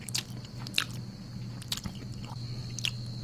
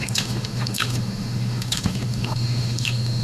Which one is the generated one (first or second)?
second